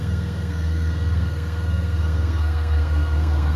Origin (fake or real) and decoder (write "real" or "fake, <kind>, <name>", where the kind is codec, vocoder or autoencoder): fake, codec, SNAC